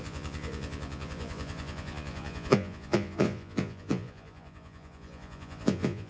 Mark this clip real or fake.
fake